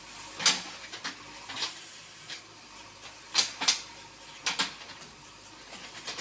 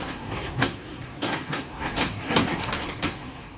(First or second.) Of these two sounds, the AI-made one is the second